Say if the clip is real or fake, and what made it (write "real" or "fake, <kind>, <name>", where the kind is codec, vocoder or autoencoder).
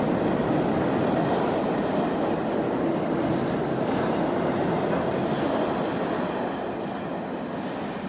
real